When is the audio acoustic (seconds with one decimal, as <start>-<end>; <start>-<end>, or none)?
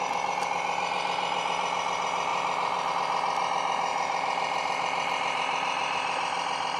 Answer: 0.0-2.3; 2.9-3.9